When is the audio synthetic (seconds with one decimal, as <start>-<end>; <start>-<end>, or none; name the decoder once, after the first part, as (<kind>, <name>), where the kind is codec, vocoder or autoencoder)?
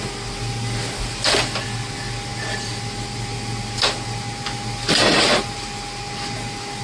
none